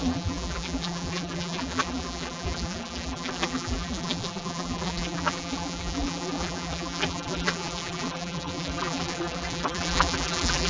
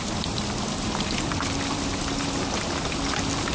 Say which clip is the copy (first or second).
first